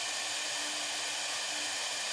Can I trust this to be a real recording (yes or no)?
yes